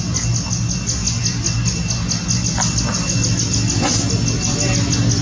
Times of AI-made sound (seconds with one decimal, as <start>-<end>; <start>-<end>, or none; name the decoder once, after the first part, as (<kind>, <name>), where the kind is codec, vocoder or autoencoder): none

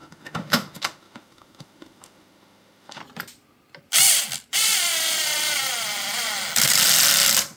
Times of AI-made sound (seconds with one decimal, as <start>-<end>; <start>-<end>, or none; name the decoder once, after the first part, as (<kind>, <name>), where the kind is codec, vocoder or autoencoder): 0.0-3.0 (autoencoder, DAC-VAE)

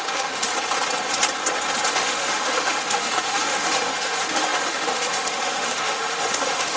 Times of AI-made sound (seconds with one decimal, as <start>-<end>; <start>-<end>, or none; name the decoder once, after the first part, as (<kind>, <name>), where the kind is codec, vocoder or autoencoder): 0.0-0.5 (autoencoder, DAC-VAE); 1.9-6.8

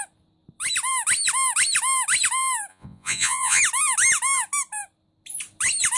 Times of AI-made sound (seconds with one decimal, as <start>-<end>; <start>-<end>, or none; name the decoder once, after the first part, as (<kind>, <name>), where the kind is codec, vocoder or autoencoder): 2.7-3.6 (vocoder, Vocos)

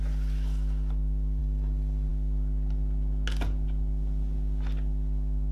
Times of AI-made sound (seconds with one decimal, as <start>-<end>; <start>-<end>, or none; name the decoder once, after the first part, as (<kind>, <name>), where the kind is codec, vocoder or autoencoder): none

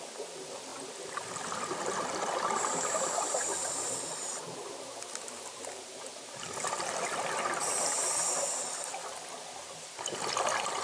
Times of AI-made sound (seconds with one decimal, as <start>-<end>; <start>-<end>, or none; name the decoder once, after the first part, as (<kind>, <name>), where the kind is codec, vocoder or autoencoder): none

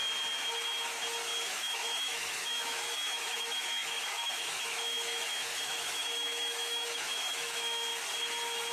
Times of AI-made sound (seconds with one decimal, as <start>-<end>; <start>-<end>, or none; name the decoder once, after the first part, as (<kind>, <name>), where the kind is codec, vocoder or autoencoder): 1.4-7.9 (autoencoder, DAC-VAE)